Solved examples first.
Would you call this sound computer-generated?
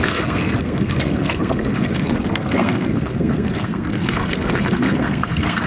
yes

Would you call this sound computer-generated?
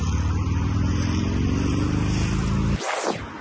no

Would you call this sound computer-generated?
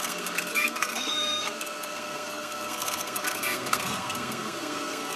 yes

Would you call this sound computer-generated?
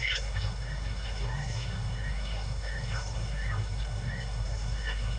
yes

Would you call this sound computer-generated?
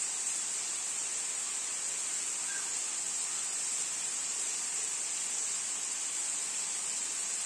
no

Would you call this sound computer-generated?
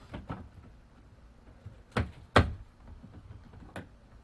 no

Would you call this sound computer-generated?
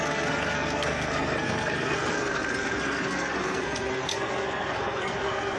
yes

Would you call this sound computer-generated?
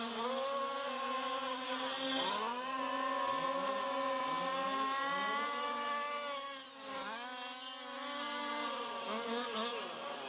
no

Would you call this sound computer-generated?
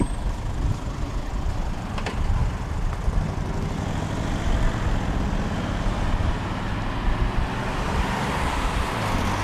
no